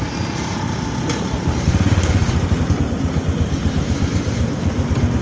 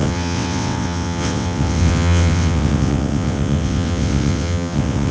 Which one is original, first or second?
first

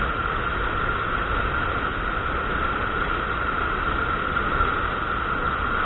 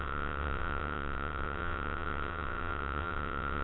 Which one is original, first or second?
first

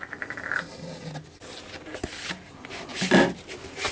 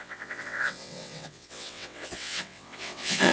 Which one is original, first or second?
first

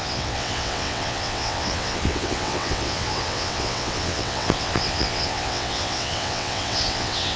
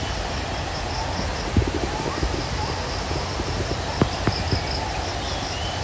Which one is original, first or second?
second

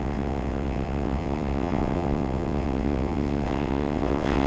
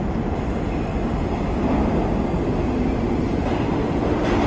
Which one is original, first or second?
second